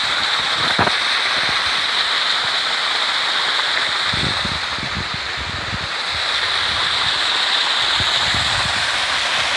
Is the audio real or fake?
real